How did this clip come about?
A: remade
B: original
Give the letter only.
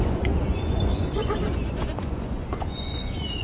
A